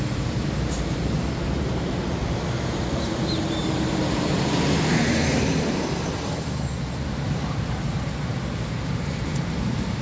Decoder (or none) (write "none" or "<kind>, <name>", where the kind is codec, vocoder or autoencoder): vocoder, BigVGAN v2